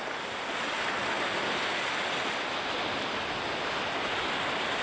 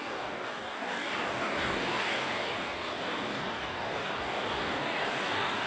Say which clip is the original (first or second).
first